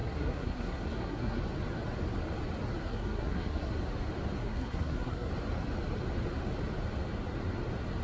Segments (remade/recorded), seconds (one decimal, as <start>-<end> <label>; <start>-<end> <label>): 0.0-1.4 remade; 1.4-2.8 recorded; 2.8-3.7 remade; 3.7-4.4 recorded; 4.4-5.3 remade; 5.3-8.0 recorded